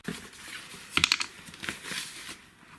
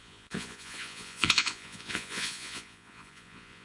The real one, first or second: first